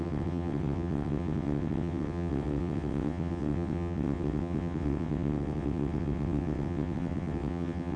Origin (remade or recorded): remade